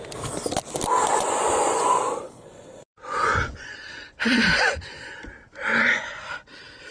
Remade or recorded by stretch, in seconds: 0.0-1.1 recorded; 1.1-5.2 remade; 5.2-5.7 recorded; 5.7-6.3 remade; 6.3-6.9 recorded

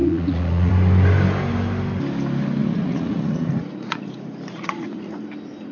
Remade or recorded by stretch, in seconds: 0.0-0.7 remade; 0.7-2.6 recorded; 2.6-5.2 remade; 5.2-5.7 recorded

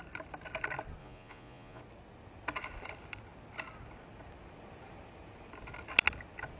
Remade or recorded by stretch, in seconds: 0.0-1.0 recorded; 1.0-1.8 remade; 1.8-6.6 recorded

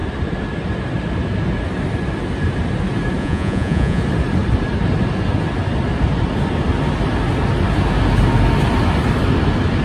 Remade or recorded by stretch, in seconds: 0.0-3.2 recorded; 3.2-4.0 remade; 4.0-9.8 recorded

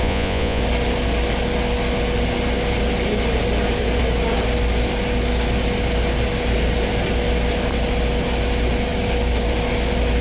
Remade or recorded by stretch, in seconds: 0.0-0.6 remade; 0.6-10.2 recorded

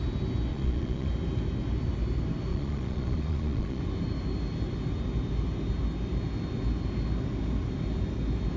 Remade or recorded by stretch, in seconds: 0.0-0.5 recorded; 0.5-1.1 remade; 1.1-2.5 recorded; 2.5-3.8 remade; 3.8-8.6 recorded